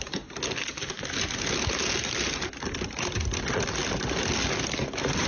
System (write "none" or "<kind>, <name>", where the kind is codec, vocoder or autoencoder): none